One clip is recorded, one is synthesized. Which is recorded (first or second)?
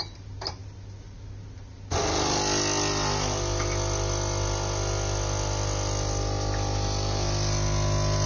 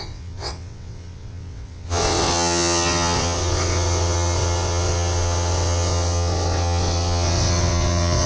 first